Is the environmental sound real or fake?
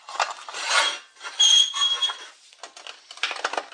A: real